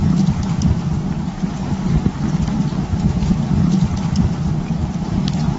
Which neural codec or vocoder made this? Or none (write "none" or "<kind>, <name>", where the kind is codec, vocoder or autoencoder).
none